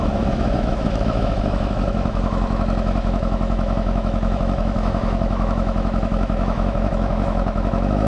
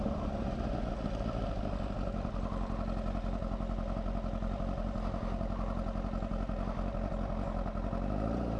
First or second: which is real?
second